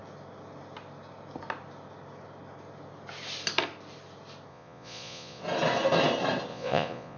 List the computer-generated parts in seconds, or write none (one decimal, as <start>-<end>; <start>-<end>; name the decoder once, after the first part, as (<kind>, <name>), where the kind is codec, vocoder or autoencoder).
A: 4.5-5.4 (vocoder, Vocos); 6.5-7.2